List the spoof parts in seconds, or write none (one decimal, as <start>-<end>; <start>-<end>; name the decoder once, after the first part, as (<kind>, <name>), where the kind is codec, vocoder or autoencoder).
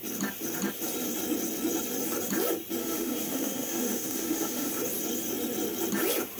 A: 2.8-4.7 (autoencoder, DAC-VAE)